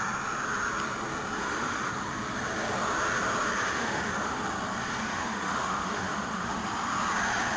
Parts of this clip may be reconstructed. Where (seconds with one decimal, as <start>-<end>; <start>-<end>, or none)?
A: 1.4-1.9; 3.7-4.4; 5.0-6.6